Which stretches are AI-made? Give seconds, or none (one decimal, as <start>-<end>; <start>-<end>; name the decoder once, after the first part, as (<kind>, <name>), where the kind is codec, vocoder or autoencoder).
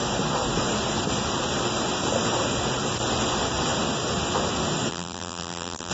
4.9-5.9 (vocoder, BigVGAN v2)